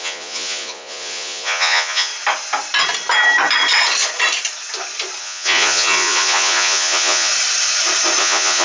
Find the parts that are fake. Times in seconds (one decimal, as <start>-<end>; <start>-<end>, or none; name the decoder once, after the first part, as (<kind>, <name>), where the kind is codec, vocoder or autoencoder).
0.0-2.1 (vocoder, Vocos); 5.2-7.3; 8.2-8.6